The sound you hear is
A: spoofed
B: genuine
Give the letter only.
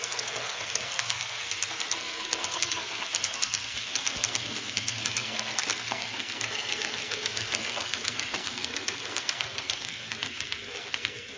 A